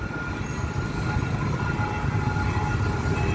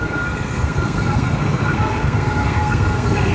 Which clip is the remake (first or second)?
second